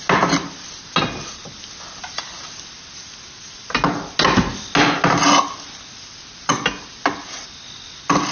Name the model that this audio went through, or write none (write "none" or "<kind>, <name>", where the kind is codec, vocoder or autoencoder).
none